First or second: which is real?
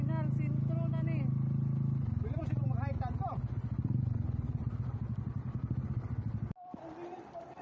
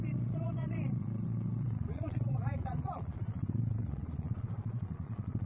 first